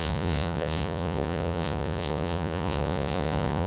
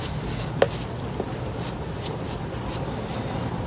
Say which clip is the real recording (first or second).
second